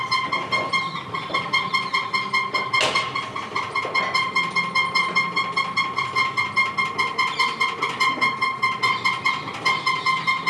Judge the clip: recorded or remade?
recorded